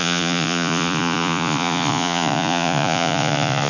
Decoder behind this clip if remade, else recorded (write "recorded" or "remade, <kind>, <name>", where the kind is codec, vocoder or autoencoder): remade, vocoder, Vocos